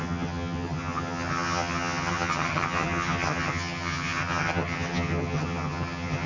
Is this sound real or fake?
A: fake